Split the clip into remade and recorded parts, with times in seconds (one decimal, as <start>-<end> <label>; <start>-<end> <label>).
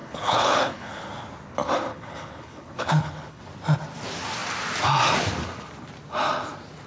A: 0.0-1.1 remade; 1.1-1.9 recorded; 1.9-3.4 remade; 3.4-6.9 recorded